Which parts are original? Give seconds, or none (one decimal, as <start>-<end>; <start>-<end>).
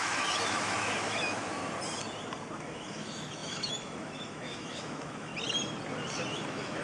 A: 1.6-2.6; 5.3-6.3